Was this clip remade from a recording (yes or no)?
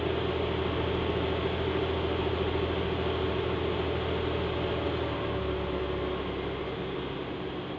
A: no